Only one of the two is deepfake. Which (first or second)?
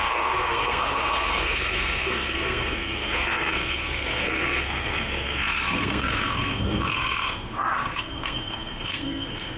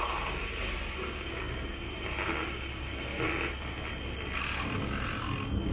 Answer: first